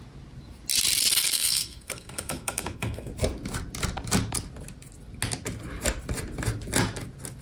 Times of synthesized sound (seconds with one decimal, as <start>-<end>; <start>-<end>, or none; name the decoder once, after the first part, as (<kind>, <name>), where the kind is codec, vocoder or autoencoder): 1.1-3.1 (codec, SNAC)